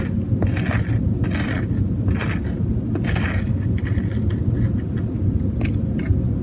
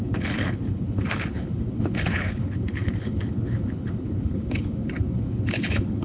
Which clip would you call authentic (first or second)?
first